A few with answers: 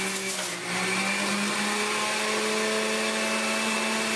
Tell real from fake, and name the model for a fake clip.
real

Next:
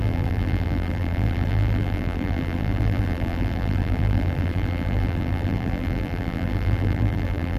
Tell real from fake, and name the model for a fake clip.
fake, vocoder, BigVGAN v2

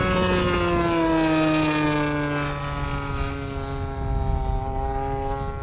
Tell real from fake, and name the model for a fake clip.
real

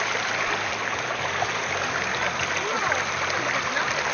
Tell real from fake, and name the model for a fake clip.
real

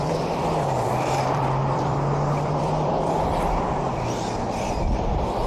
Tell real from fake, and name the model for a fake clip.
fake, vocoder, BigVGAN v2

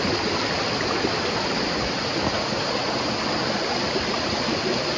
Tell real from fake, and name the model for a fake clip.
real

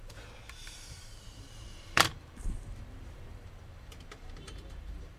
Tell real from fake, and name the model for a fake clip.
fake, vocoder, BigVGAN v2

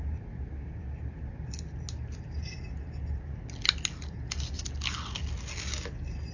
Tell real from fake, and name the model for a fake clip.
real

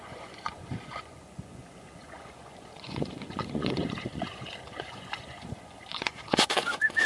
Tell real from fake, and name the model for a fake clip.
fake, vocoder, Vocos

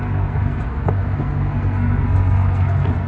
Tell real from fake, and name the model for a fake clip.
fake, codec, SNAC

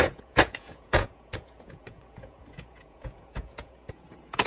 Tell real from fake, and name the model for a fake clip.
fake, vocoder, Vocos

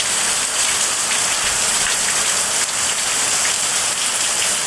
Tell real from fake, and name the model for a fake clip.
real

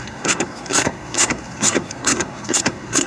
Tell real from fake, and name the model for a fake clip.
fake, codec, SNAC